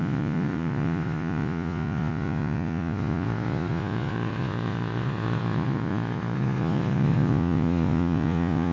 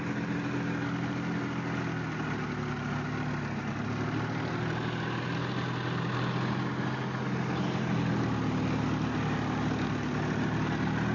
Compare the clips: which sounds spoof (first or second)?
first